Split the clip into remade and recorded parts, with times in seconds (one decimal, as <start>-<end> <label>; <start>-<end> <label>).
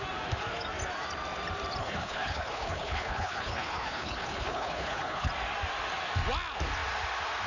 0.0-1.8 recorded; 1.8-5.3 remade; 5.3-7.5 recorded